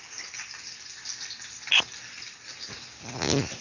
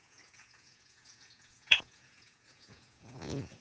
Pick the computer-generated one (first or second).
second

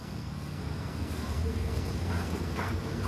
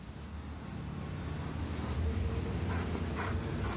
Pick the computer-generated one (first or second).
first